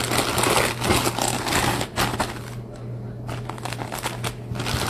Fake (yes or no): no